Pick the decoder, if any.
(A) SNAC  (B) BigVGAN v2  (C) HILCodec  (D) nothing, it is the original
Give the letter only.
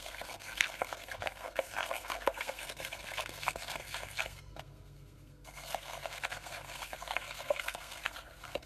A